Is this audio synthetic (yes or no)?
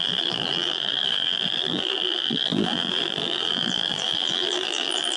yes